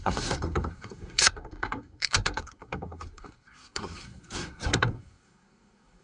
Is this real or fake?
fake